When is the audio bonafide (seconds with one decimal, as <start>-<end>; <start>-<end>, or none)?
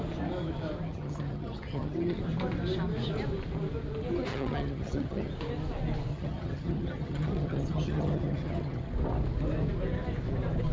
0.0-0.9; 2.2-4.3; 5.3-6.1; 8.9-10.7